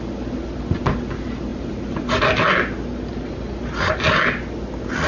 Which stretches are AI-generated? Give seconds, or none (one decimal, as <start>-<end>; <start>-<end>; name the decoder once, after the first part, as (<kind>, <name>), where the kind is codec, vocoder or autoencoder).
1.5-2.2 (vocoder, BigVGAN v2); 3.1-3.9